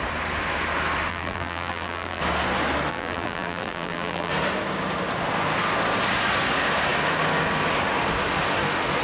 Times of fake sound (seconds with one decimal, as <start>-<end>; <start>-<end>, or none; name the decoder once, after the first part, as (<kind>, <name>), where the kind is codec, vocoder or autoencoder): 1.1-2.2 (vocoder, BigVGAN v2); 2.9-4.3